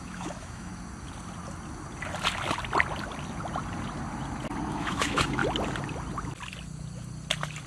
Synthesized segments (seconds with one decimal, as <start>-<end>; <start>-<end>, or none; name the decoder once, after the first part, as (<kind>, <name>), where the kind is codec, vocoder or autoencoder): 0.0-0.7 (autoencoder, DAC-VAE); 4.7-5.4